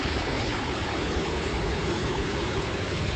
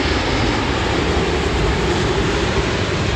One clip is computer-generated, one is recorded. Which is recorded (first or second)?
second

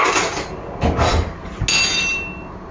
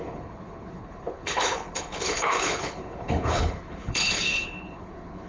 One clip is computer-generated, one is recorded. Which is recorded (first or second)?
first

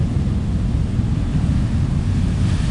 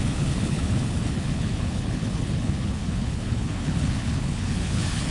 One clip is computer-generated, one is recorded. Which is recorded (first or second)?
first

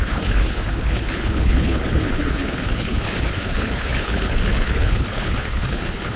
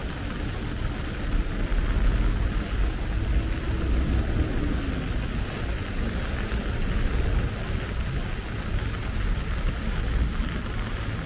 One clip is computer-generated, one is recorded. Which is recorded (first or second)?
second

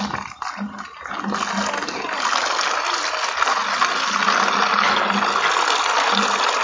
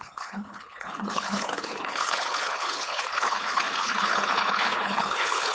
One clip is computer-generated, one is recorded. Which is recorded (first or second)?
first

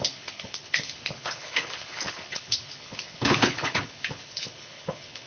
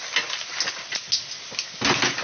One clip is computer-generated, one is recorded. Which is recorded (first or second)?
second